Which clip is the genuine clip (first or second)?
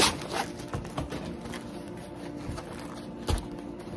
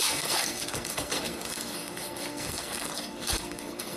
first